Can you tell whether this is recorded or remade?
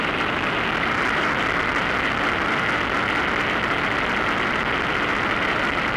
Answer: recorded